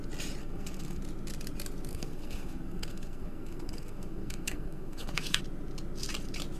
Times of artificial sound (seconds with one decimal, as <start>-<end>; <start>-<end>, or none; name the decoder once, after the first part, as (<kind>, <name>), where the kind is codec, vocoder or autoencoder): 0.4-1.0 (codec, SNAC); 1.9-5.4